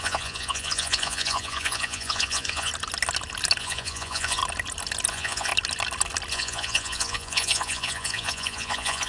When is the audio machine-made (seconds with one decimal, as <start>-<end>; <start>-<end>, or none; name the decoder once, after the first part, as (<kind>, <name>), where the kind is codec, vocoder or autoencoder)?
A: 0.0-2.7 (vocoder, Vocos); 3.6-4.4; 5.1-5.5; 6.3-9.1